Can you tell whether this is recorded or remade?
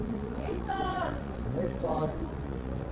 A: remade